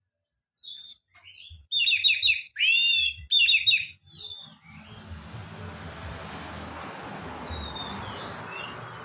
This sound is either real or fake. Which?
real